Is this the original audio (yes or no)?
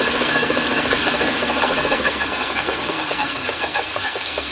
no